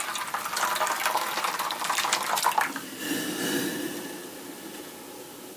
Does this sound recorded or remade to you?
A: recorded